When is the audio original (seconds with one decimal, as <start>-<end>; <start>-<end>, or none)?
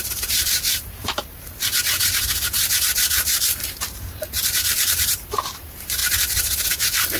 1.7-3.1; 6.0-6.7